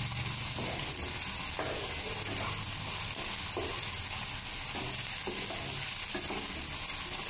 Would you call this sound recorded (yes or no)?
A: yes